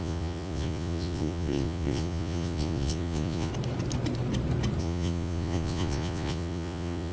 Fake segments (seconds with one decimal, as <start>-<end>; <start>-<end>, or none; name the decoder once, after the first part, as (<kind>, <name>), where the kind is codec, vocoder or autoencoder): 0.0-3.5 (vocoder, Vocos); 4.8-7.1